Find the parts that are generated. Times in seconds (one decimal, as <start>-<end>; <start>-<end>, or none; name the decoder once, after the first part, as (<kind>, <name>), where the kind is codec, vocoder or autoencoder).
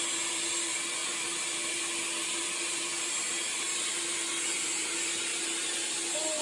none